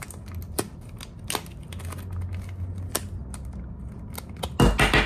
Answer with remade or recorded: recorded